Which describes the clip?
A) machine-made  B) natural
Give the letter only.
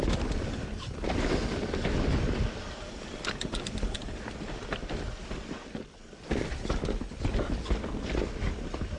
B